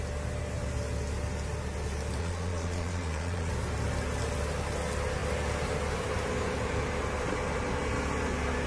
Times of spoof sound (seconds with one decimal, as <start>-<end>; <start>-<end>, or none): 2.2-3.5